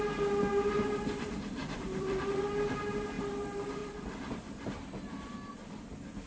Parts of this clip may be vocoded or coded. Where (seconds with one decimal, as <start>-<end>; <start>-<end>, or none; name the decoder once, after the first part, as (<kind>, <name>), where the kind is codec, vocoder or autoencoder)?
1.6-2.2 (vocoder, BigVGAN v2); 3.8-5.8